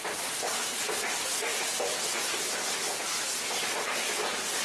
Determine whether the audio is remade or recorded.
recorded